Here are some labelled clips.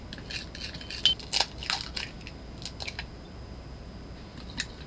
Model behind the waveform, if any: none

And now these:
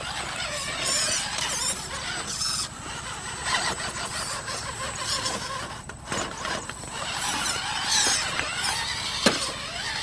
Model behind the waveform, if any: none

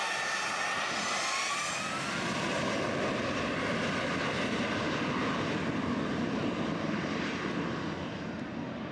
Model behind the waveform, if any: none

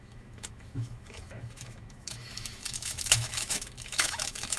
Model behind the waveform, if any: autoencoder, DAC-VAE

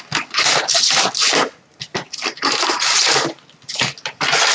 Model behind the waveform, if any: none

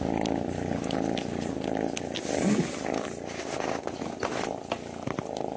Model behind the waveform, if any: none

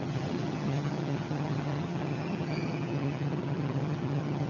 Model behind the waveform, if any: vocoder, HiFi-GAN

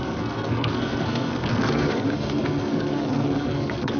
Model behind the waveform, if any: codec, SNAC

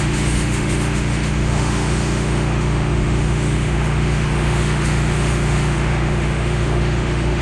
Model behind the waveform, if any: autoencoder, DAC-VAE